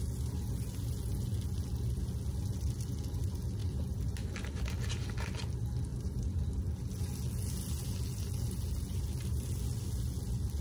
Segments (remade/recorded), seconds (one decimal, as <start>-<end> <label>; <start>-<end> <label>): 0.0-3.6 recorded; 3.6-4.7 remade; 4.7-5.9 recorded; 5.9-6.4 remade; 6.4-10.6 recorded